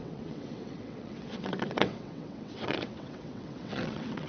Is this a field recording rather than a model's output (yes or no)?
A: no